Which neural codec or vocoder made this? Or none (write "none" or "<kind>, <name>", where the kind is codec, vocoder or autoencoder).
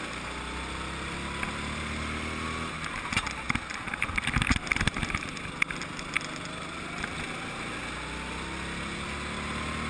none